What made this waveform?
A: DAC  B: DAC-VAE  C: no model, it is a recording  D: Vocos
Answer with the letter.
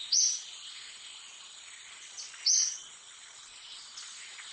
D